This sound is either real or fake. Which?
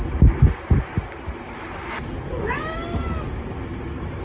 real